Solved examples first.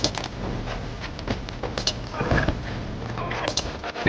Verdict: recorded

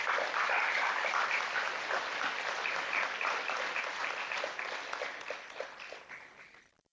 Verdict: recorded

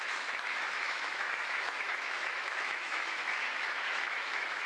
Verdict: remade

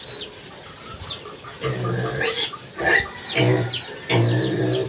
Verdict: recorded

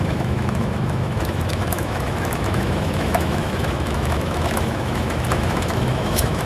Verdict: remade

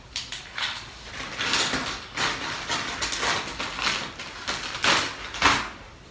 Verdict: recorded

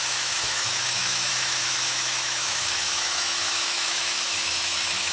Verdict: remade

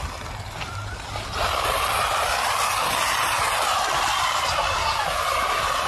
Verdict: recorded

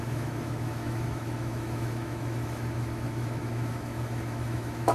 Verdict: remade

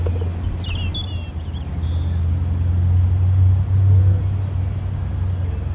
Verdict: recorded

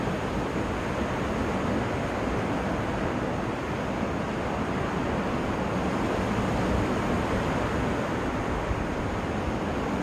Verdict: recorded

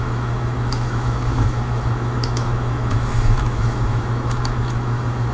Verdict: remade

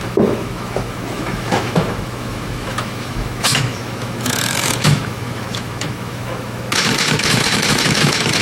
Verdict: remade